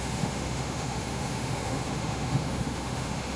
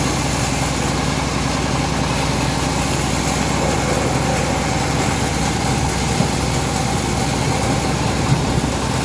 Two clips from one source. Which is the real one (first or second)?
second